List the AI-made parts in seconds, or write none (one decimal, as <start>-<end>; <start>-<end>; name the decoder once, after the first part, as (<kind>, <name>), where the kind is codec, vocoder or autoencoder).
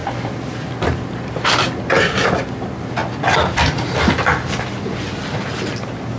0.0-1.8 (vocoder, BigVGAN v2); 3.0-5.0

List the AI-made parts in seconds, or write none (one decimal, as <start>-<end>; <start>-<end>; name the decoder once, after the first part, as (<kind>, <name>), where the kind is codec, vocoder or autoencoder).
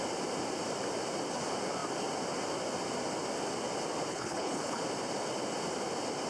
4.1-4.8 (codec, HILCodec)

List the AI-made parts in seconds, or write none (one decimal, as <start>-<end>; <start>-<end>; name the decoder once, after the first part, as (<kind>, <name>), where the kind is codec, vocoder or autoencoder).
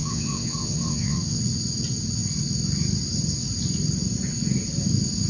0.0-1.4 (vocoder, WaveNeXt)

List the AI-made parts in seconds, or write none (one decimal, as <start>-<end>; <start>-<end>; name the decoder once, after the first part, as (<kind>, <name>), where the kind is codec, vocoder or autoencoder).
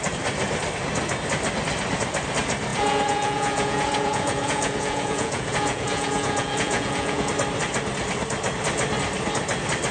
2.7-7.3 (vocoder, Vocos)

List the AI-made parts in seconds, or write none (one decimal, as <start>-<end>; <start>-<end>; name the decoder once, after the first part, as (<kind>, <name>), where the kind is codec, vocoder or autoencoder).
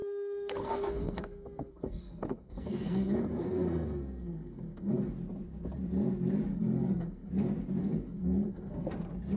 0.0-5.1 (codec, SNAC); 6.5-7.3; 7.8-8.9